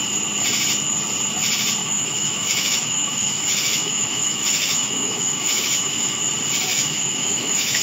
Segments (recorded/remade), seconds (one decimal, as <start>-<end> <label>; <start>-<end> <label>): 0.0-1.8 recorded; 1.8-6.2 remade; 6.2-6.7 recorded; 6.7-7.8 remade